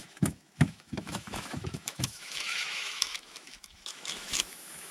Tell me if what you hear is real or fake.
fake